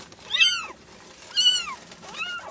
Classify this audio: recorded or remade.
recorded